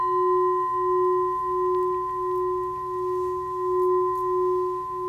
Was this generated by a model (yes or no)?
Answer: no